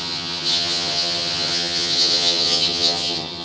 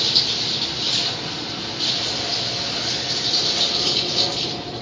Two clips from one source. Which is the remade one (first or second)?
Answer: first